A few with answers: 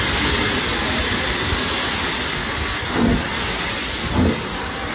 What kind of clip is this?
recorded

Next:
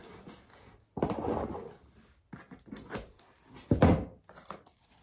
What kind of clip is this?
recorded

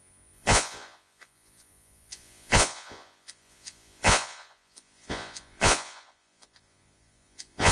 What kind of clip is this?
remade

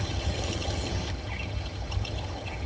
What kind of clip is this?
remade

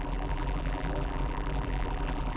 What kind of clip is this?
remade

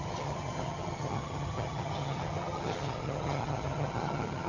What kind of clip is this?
remade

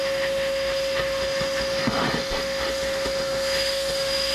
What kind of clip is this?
remade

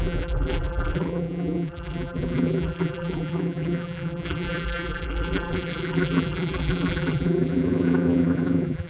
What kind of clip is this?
remade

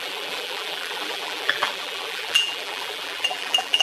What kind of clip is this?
remade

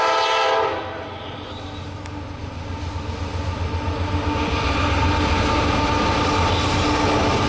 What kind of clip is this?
recorded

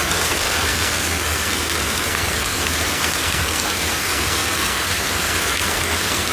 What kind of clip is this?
remade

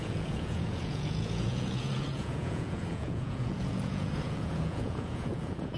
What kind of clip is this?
remade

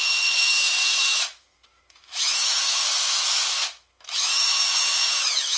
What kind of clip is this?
remade